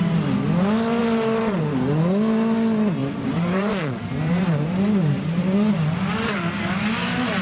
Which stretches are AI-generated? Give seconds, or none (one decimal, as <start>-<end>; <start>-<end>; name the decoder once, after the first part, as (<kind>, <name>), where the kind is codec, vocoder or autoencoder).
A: 1.0-1.6 (vocoder, BigVGAN v2); 3.0-6.0